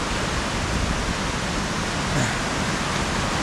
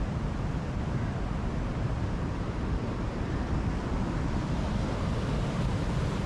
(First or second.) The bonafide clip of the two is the first